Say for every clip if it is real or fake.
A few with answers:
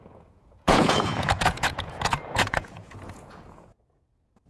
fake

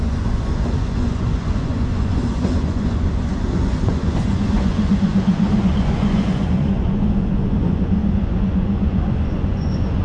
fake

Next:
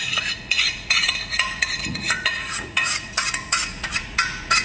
fake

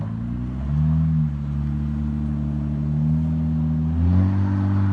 real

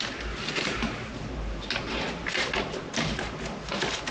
real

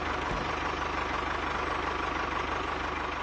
real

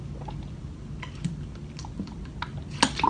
real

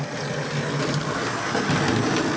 real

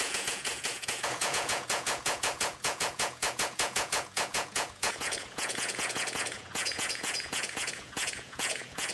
fake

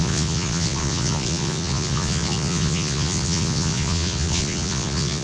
fake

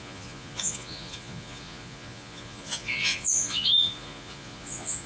fake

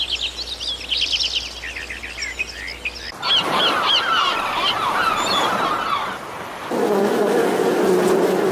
real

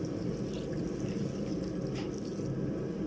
real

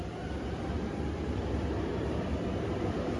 real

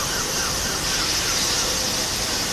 real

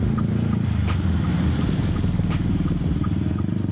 real